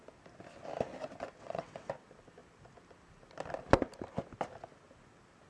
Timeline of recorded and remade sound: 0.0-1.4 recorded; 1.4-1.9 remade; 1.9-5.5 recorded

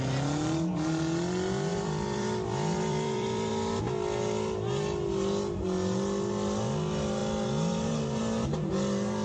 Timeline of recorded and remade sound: 0.0-1.7 recorded; 1.7-3.5 remade; 3.5-9.2 recorded